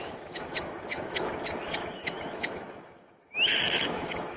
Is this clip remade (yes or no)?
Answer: yes